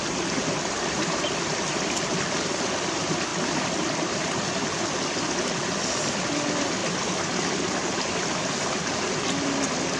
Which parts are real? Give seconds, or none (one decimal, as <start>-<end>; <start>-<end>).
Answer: 0.0-10.0